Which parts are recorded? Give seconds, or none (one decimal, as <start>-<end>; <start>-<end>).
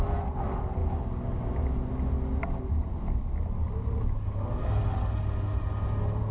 0.0-6.3